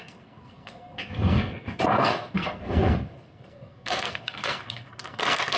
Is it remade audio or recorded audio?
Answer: remade